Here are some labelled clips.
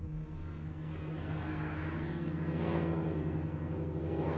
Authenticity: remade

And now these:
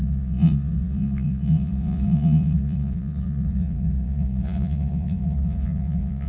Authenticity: remade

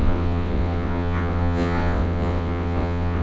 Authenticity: remade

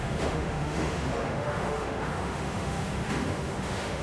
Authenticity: remade